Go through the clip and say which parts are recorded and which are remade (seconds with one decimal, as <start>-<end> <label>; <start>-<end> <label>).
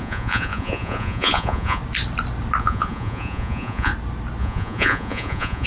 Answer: 0.0-1.8 remade; 1.8-2.6 recorded; 2.6-3.9 remade; 3.9-4.4 recorded; 4.4-5.7 remade